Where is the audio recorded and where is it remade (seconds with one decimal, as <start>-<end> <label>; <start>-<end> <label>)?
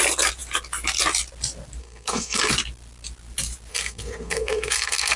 0.0-1.8 recorded; 1.8-2.5 remade; 2.5-3.7 recorded; 3.7-5.2 remade